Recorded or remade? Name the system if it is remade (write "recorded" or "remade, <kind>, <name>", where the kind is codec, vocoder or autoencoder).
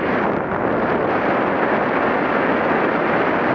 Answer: recorded